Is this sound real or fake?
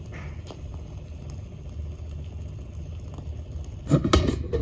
real